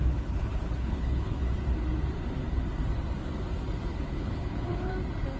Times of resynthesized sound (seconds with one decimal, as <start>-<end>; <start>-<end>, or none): 0.0-1.4; 3.9-4.9